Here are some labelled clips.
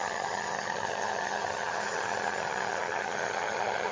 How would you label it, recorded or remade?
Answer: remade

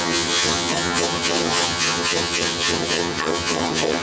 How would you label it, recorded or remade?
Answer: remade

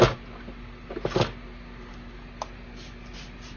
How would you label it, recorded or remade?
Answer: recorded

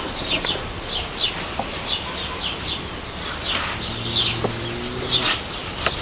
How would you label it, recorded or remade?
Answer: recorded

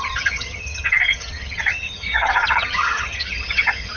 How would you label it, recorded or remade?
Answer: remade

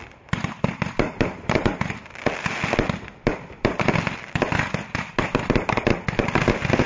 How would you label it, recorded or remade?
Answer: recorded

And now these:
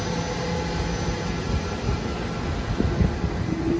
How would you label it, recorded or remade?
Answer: recorded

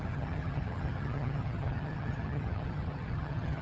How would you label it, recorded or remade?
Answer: remade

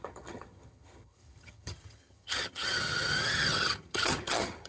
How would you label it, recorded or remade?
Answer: remade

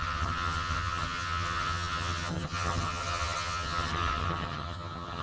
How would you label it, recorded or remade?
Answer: remade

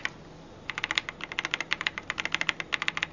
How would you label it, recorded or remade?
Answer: recorded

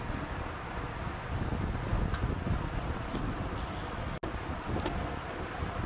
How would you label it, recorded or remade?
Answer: recorded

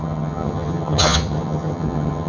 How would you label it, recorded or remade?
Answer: remade